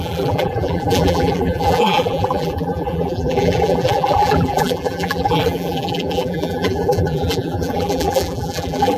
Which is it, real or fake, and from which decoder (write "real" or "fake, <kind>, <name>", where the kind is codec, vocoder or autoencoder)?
fake, vocoder, BigVGAN v2